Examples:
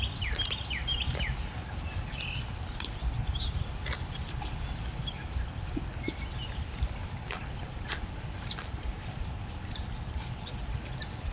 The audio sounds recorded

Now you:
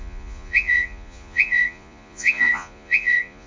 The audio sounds remade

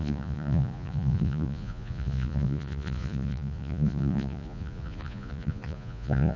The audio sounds remade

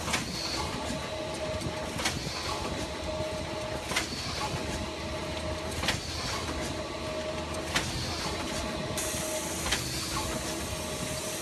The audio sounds recorded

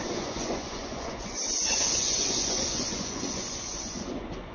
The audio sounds remade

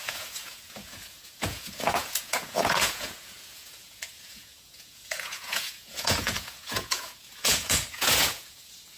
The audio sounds remade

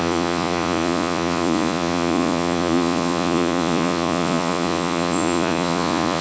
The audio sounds remade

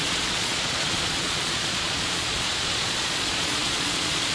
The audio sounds remade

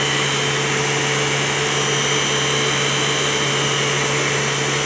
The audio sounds recorded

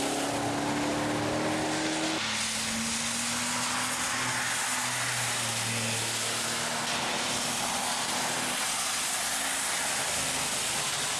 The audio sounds recorded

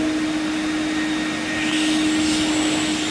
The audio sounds recorded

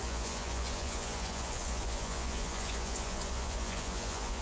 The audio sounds remade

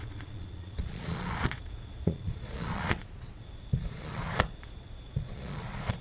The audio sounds remade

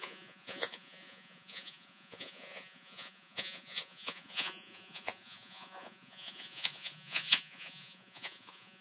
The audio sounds remade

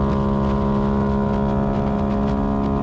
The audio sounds recorded